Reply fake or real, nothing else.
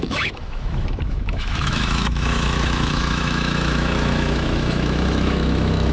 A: fake